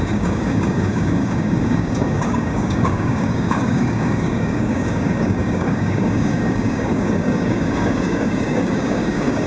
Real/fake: fake